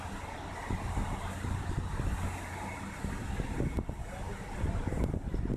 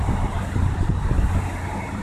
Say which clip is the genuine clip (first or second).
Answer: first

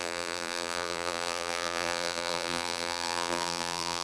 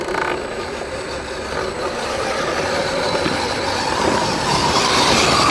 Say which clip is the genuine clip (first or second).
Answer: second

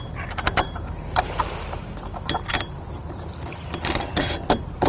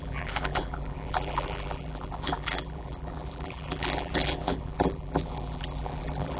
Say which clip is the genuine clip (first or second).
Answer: first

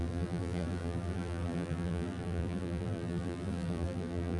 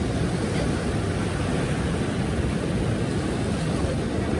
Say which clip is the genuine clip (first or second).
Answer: second